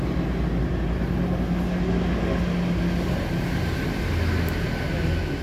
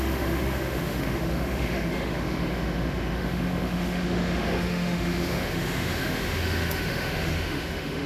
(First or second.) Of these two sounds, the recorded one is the first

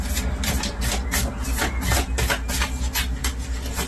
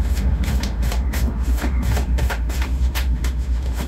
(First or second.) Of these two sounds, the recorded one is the first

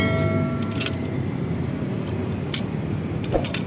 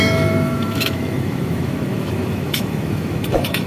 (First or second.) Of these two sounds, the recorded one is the first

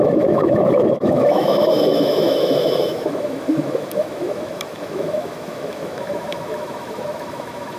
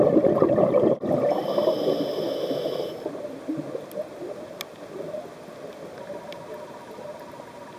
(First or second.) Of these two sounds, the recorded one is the second